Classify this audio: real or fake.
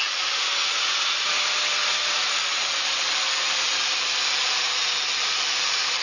real